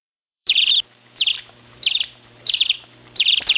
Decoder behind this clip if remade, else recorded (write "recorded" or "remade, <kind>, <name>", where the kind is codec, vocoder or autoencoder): remade, vocoder, BigVGAN v2